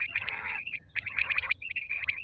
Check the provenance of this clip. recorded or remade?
remade